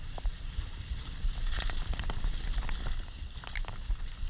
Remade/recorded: recorded